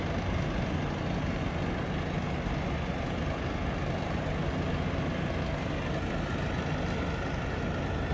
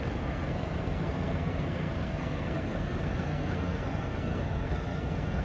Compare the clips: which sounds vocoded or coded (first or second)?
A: second